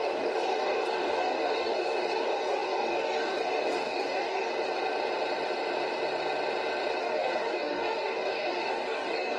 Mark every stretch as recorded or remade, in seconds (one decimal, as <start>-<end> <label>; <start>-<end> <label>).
0.0-4.5 remade; 4.5-7.0 recorded; 7.0-9.4 remade